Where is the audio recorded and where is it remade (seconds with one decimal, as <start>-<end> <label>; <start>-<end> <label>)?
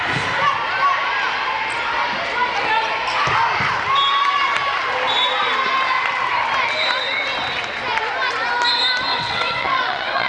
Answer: 0.0-9.1 recorded; 9.1-10.3 remade